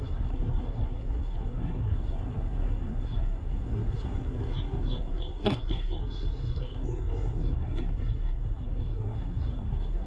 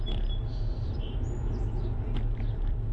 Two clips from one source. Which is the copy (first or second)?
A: first